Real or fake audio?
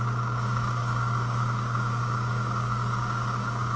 fake